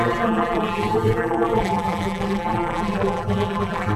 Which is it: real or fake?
fake